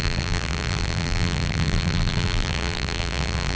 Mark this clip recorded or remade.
remade